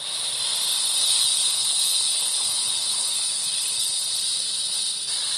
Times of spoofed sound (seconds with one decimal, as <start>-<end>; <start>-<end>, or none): 1.0-4.2